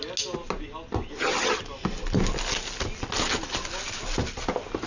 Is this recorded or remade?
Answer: recorded